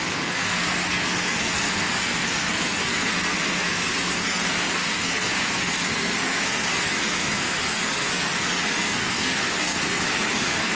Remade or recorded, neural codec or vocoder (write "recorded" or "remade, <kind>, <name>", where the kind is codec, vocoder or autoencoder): remade, codec, SNAC